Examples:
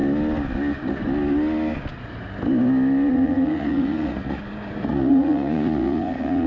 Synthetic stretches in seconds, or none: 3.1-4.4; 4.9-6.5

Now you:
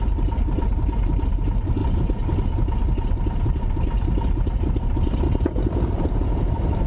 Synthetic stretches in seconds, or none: none